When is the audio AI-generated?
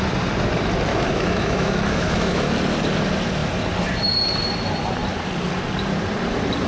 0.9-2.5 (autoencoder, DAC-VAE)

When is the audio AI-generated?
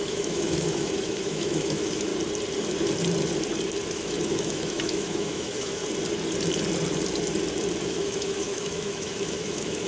0.0-2.1 (autoencoder, DAC-VAE); 3.9-5.8; 7.8-9.9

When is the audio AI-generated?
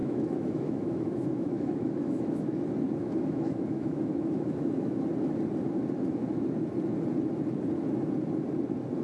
0.0-2.6 (autoencoder, DAC-VAE); 3.0-5.0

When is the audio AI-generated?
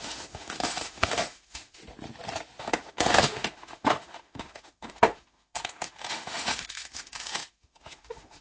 0.0-1.8 (autoencoder, DAC-VAE); 2.6-8.4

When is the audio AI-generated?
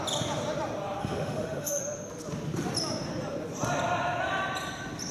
1.0-1.8 (autoencoder, DAC-VAE)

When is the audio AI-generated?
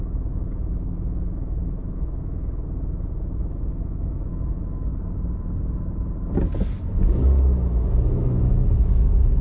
0.0-4.9 (autoencoder, DAC-VAE)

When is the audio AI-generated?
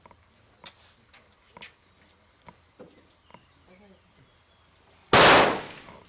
none